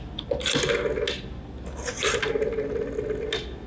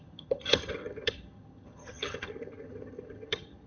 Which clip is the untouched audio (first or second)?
first